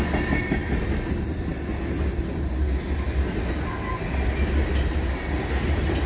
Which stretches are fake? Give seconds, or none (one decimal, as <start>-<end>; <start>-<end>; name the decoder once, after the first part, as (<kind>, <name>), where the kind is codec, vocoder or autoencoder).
none

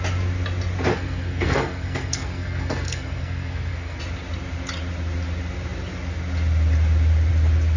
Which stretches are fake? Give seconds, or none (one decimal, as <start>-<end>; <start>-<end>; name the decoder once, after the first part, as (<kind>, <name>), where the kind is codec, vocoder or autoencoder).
0.9-4.0 (codec, SNAC)

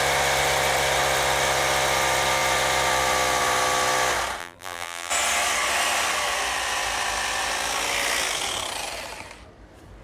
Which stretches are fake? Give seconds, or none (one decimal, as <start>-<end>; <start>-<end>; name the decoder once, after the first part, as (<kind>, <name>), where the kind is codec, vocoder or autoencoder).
4.4-5.1 (vocoder, BigVGAN v2)

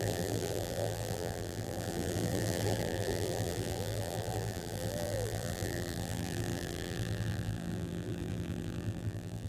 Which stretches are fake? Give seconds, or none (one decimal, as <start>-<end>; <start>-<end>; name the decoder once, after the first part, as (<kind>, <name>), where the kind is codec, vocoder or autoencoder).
0.0-9.5 (vocoder, BigVGAN v2)

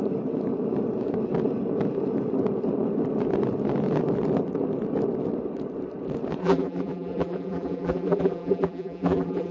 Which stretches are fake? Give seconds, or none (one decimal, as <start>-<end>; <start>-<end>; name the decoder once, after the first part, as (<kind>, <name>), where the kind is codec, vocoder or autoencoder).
6.4-9.5 (vocoder, BigVGAN v2)

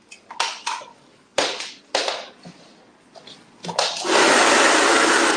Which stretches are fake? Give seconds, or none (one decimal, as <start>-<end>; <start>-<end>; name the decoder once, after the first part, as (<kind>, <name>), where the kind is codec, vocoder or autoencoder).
none

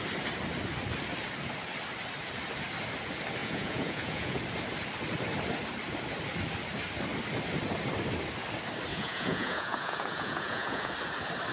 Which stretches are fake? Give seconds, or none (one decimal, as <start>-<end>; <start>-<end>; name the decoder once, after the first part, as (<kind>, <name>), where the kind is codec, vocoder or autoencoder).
3.4-4.4 (vocoder, Vocos); 8.9-10.9

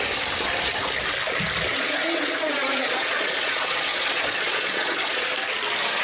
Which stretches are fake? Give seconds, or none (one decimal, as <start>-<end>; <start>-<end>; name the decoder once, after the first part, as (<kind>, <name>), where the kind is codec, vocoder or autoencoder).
1.7-5.3 (vocoder, Vocos)